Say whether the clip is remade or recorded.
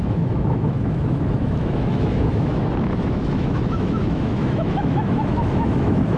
remade